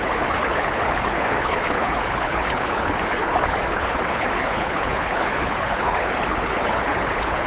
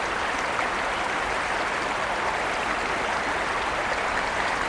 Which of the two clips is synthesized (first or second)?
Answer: first